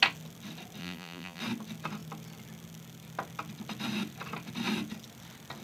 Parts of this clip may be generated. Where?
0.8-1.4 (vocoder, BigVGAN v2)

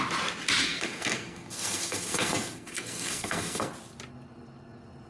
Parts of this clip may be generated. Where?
0.6-3.7 (codec, SNAC)